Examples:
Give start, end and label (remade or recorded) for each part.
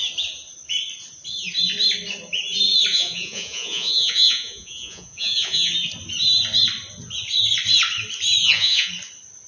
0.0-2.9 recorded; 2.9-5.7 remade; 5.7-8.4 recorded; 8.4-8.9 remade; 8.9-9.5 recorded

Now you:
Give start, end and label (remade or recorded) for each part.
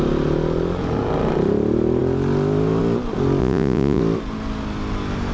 0.0-3.4 recorded; 3.4-4.0 remade; 4.0-5.3 recorded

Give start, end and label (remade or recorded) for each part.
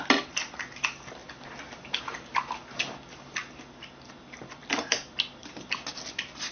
0.0-6.5 recorded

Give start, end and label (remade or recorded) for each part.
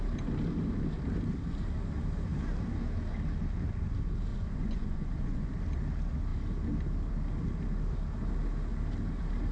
0.0-4.3 recorded; 4.3-5.5 remade; 5.5-9.5 recorded